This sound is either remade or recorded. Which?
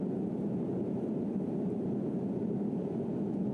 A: recorded